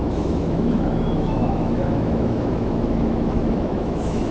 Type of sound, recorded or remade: remade